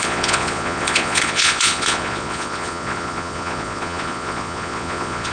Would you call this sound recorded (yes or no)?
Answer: no